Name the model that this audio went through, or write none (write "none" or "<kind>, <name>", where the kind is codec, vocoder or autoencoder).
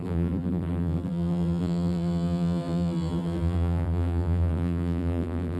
vocoder, BigVGAN v2